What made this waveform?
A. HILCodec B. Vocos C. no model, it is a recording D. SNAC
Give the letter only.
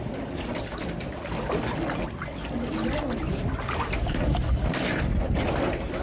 C